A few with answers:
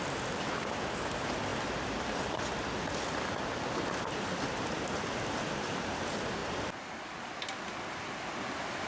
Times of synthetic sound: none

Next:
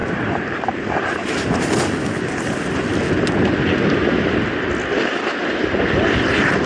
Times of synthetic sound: 0.0-1.5 (vocoder, BigVGAN v2)

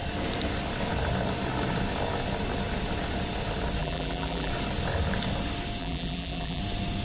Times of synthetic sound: 3.8-4.5 (vocoder, BigVGAN v2); 5.8-6.6

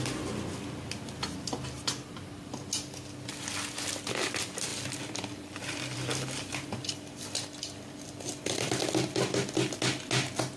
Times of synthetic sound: 4.7-8.7 (vocoder, BigVGAN v2)

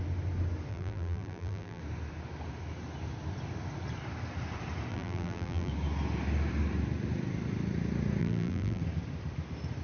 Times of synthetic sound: 0.7-1.8 (vocoder, BigVGAN v2); 4.9-5.7; 8.2-8.8

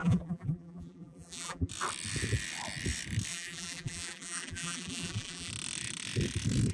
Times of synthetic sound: 0.0-1.7 (vocoder, BigVGAN v2); 3.3-5.5

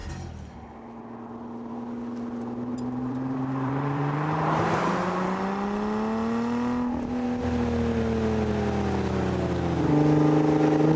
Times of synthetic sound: 2.7-4.8 (vocoder, BigVGAN v2)